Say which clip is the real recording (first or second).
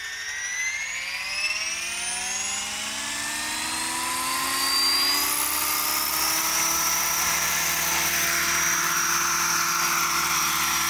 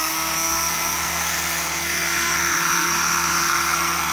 first